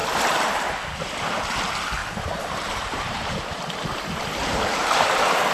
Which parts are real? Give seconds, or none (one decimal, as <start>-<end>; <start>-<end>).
0.0-2.0; 3.6-5.5